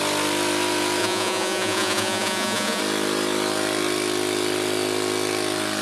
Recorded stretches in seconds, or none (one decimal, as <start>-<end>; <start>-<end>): 0.0-1.0; 2.8-5.8